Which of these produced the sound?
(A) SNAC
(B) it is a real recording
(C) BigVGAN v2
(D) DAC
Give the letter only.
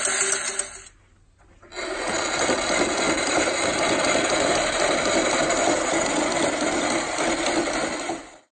B